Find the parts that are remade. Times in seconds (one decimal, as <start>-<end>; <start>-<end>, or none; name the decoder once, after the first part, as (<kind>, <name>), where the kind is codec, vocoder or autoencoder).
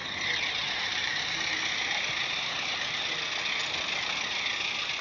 0.0-3.0 (vocoder, BigVGAN v2)